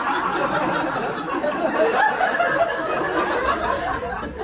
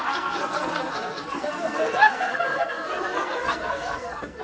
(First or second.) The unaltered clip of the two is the first